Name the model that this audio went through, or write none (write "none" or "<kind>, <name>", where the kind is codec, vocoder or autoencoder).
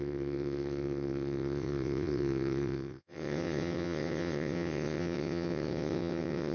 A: vocoder, WaveNeXt